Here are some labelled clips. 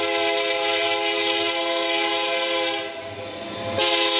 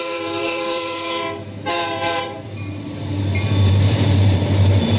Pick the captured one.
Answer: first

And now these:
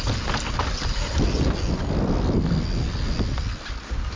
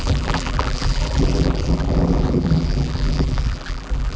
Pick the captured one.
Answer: first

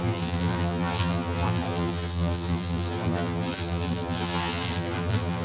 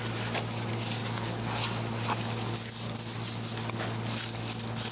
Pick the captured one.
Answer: second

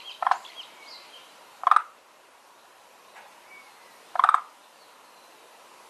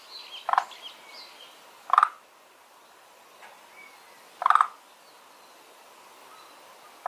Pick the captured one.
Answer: second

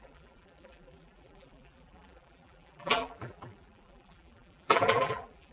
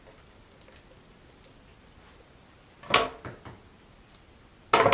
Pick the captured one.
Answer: second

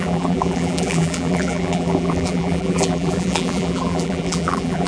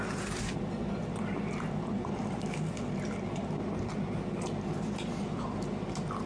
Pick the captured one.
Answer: second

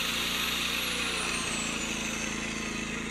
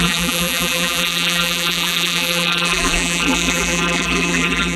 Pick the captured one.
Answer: first